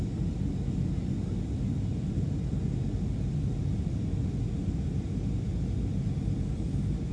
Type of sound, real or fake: real